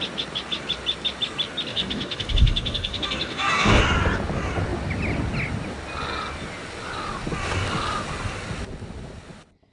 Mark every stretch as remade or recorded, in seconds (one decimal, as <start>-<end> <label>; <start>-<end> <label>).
0.0-1.7 recorded; 1.7-3.8 remade; 3.8-9.7 recorded